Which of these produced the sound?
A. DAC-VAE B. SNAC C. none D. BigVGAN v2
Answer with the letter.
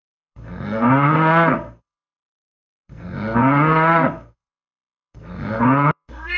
B